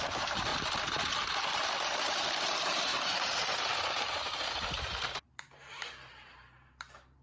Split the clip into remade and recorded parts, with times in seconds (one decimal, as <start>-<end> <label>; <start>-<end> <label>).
0.0-0.5 remade; 0.5-1.7 recorded; 1.7-7.2 remade